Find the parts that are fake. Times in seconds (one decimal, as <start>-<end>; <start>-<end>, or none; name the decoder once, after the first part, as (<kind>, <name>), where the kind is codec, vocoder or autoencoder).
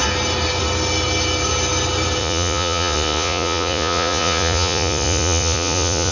2.2-6.1 (vocoder, Vocos)